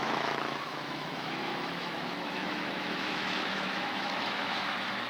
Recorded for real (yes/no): no